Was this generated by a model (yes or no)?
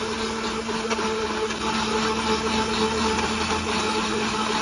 no